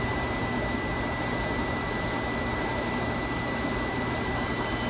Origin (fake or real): fake